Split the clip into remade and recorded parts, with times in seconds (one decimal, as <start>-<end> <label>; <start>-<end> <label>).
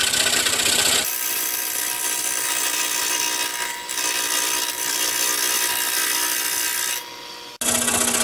0.0-3.0 remade; 3.0-3.5 recorded; 3.5-5.1 remade; 5.1-8.2 recorded